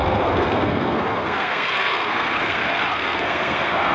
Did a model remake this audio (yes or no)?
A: yes